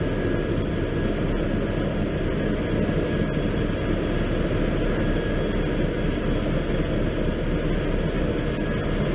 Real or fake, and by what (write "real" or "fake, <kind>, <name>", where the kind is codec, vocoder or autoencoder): real